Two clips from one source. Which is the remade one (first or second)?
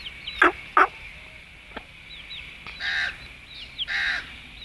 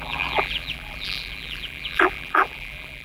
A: second